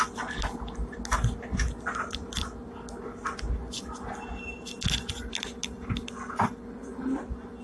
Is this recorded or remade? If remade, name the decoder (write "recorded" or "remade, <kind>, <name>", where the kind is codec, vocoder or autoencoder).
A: recorded